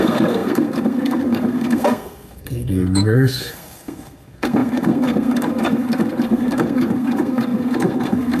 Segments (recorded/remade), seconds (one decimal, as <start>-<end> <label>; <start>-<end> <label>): 0.0-8.4 remade